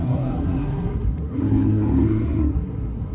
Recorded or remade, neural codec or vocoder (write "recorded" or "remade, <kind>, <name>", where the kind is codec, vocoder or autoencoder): remade, codec, SNAC